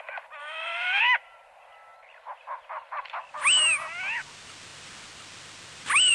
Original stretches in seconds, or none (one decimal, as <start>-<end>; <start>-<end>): 0.0-0.4; 1.0-6.1